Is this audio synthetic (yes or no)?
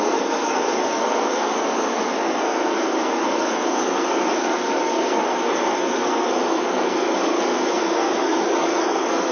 yes